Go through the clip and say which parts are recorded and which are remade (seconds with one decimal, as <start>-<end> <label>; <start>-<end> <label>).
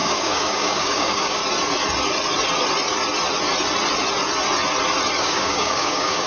0.0-1.4 remade; 1.4-5.2 recorded; 5.2-6.3 remade